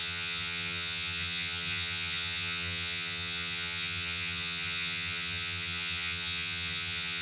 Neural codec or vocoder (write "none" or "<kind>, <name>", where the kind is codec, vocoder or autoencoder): vocoder, HiFi-GAN